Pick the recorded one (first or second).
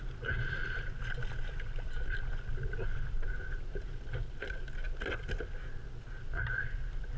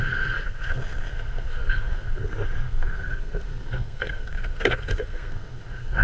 first